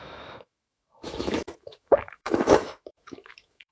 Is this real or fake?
fake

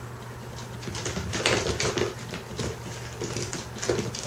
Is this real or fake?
real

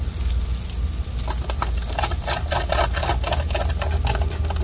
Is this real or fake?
real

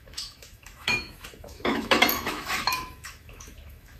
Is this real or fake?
fake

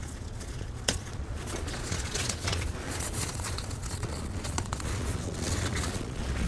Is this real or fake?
fake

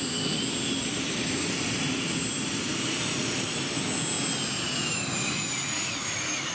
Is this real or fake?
real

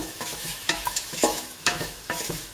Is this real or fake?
fake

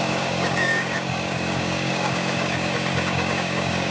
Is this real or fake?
fake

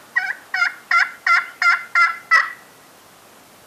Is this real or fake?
real